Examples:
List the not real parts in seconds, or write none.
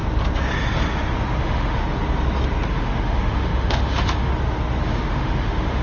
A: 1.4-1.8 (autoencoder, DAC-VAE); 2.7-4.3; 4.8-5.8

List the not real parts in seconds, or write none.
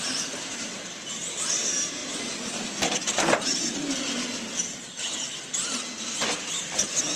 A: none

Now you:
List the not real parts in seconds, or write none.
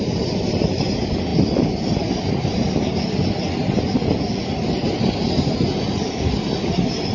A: none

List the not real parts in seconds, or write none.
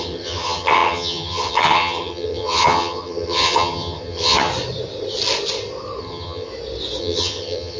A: 0.0-4.5 (vocoder, HiFi-GAN); 6.0-6.5; 7.0-7.8